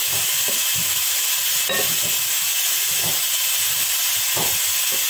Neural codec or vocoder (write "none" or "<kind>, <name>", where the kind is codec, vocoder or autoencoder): none